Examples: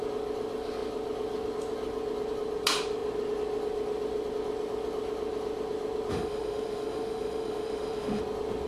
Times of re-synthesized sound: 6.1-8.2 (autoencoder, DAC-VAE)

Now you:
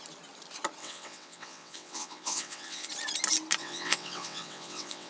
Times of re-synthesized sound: 0.8-2.9 (vocoder, WaveNeXt); 3.6-5.1

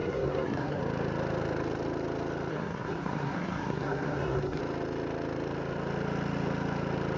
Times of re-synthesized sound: 0.0-0.8 (codec, SNAC); 2.5-4.6

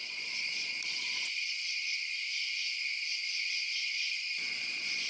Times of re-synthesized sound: 0.0-2.2 (vocoder, Vocos); 3.5-5.1